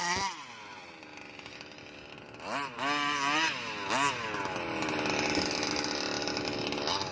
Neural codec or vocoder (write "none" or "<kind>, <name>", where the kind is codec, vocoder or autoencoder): none